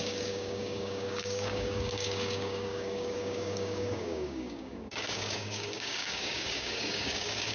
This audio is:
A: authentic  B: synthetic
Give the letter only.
B